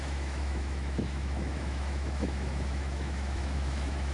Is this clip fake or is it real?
fake